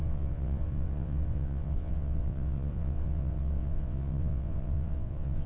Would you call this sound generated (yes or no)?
yes